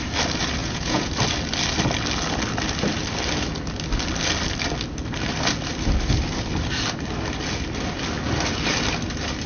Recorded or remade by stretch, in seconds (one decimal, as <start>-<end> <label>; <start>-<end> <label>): 0.0-0.6 recorded; 0.6-1.1 remade; 1.1-9.5 recorded